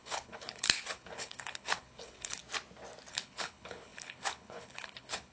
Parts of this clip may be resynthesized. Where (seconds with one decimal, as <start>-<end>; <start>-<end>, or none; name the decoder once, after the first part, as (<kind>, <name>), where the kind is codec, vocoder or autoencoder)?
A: 0.0-2.4 (codec, HILCodec); 3.1-5.3